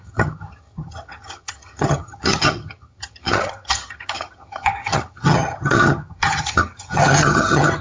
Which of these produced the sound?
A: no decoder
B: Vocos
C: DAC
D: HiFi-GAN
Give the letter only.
D